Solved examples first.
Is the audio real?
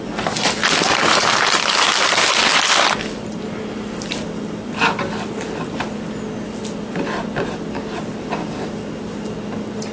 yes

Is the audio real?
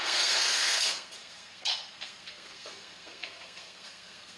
no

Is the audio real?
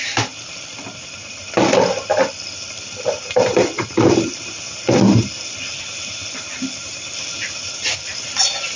yes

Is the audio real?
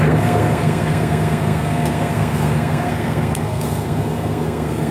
no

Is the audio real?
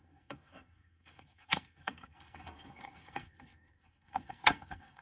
no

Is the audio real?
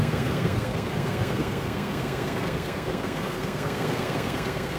no